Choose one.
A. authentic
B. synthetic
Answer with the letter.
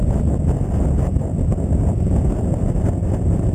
A